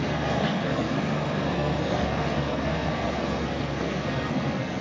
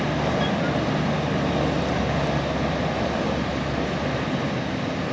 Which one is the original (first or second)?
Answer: second